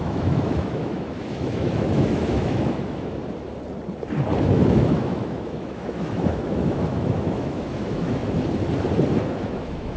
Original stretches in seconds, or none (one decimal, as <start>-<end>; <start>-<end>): 3.2-4.4; 8.2-9.2